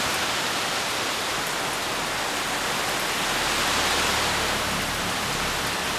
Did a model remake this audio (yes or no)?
no